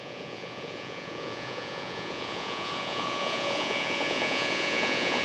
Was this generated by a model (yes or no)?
yes